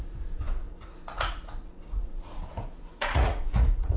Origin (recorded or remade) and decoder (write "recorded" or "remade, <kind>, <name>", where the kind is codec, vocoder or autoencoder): remade, vocoder, Vocos